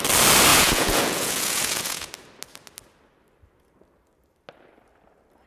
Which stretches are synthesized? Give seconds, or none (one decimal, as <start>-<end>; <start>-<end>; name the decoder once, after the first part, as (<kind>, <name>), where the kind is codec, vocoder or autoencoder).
0.5-2.1 (vocoder, Vocos)